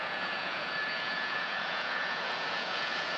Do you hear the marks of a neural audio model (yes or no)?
yes